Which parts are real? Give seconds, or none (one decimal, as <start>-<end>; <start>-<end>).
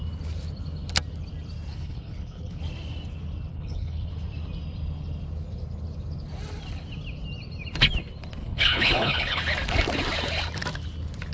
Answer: 0.0-1.7; 2.6-3.5; 4.1-8.4; 9.4-11.3